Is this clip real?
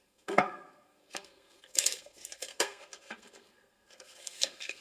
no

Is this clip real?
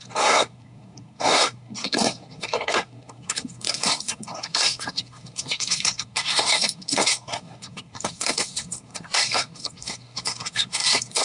no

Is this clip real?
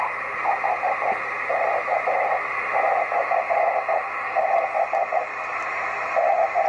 yes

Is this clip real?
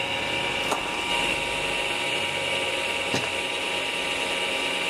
yes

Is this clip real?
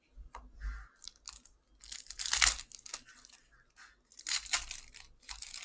yes